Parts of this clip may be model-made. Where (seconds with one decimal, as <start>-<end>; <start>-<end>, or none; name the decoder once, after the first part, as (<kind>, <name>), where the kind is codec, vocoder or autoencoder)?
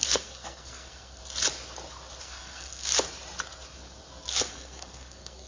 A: 0.0-1.2 (codec, SNAC); 2.2-2.9; 4.3-5.5